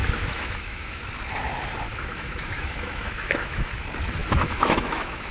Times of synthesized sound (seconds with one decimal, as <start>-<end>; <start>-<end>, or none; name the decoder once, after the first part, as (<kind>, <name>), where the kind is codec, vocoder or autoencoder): 0.0-1.0 (autoencoder, DAC-VAE); 1.9-3.7; 4.2-5.3